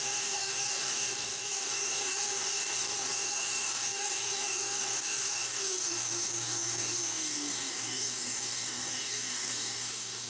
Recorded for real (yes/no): no